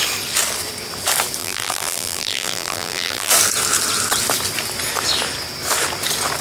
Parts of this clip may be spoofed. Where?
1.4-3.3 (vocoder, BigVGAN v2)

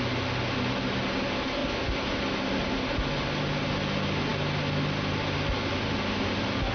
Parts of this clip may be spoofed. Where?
none

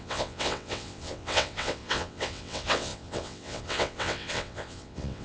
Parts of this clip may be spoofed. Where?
0.0-5.2 (vocoder, WaveNeXt)

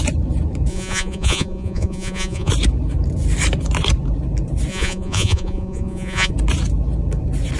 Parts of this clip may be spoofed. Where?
0.7-2.5 (vocoder, Vocos); 4.7-6.3

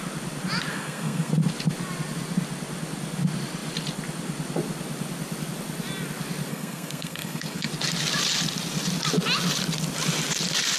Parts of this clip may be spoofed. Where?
0.7-1.3 (codec, SNAC); 6.5-7.7

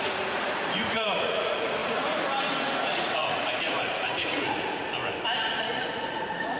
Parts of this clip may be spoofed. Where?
0.0-5.0 (vocoder, Vocos); 5.6-6.6

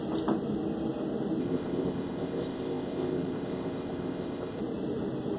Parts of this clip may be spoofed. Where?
1.4-4.6 (codec, ZipCodec)